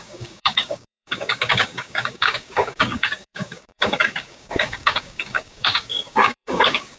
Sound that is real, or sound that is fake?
fake